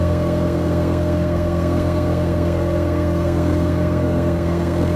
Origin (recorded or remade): remade